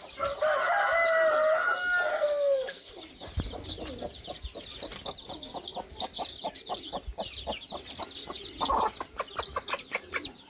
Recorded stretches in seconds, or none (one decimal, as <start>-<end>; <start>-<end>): 0.0-2.1; 2.9-10.5